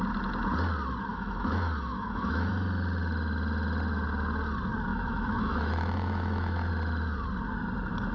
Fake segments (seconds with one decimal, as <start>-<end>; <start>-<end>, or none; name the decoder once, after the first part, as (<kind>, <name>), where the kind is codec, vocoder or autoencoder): 1.1-2.5 (autoencoder, DAC-VAE); 4.9-6.7